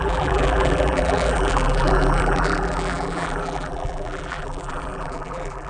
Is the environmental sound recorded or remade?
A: remade